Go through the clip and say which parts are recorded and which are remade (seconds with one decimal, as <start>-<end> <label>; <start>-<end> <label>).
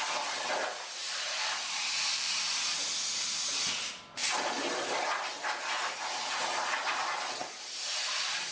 0.0-1.0 recorded; 1.0-2.9 remade; 2.9-7.4 recorded; 7.4-8.5 remade